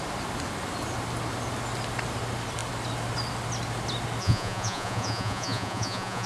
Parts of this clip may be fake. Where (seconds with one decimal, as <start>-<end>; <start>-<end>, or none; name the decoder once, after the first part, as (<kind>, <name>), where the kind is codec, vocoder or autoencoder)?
4.2-6.3 (vocoder, Vocos)